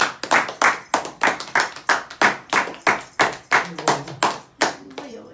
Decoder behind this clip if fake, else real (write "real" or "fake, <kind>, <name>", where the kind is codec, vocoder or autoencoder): real